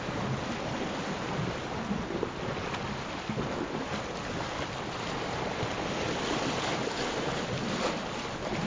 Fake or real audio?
real